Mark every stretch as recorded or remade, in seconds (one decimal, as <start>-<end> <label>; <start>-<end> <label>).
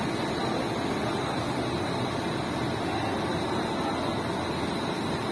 0.0-5.3 recorded